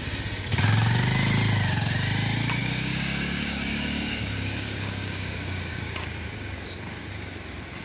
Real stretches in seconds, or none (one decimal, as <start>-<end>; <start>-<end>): 0.0-2.6; 7.1-7.8